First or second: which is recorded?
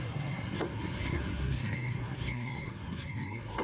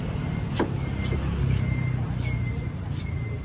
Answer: second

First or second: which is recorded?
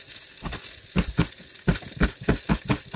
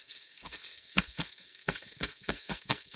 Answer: first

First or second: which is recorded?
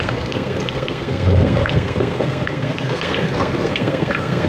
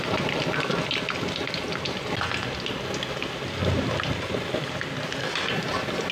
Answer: second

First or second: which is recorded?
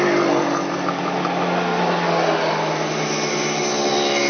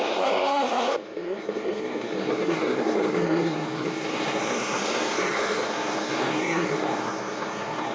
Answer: first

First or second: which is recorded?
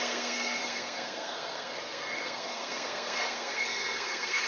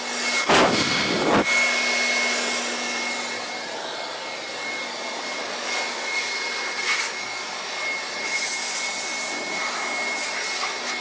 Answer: second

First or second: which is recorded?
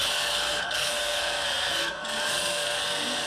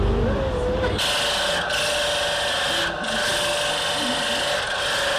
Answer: second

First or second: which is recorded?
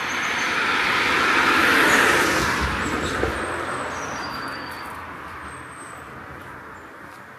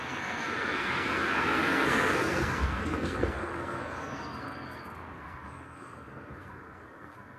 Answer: first